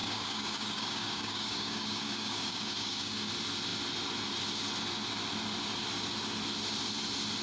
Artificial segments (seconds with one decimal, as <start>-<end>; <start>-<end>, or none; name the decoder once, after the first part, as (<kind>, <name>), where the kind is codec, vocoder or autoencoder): 0.0-3.3 (codec, DAC)